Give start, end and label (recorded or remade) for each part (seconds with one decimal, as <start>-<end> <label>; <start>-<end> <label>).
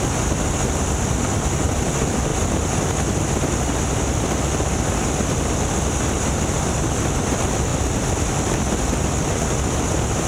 0.0-10.3 recorded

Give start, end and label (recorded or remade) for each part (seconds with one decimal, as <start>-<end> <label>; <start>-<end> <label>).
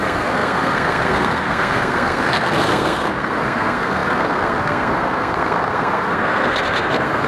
0.0-7.3 remade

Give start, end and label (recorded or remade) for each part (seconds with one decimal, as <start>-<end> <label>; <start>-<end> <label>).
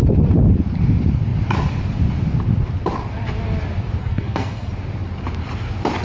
0.0-4.0 recorded; 4.0-4.7 remade; 4.7-6.0 recorded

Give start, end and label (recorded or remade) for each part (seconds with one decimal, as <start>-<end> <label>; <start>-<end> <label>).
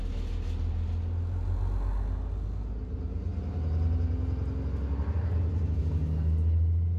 0.0-7.0 recorded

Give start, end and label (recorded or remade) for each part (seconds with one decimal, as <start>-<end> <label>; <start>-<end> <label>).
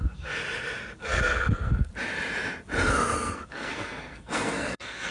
0.0-0.4 remade; 0.4-1.0 recorded; 1.0-1.9 remade; 1.9-2.9 recorded; 2.9-5.1 remade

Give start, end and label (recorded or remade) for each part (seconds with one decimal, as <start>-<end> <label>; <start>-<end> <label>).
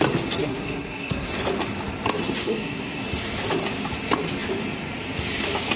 0.0-0.4 recorded; 0.4-1.3 remade; 1.3-2.4 recorded; 2.4-3.0 remade; 3.0-5.8 recorded